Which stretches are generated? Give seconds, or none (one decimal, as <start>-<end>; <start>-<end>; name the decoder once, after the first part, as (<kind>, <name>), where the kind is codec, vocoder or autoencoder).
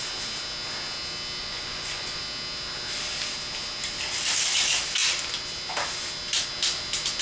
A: 1.4-2.2 (vocoder, Vocos)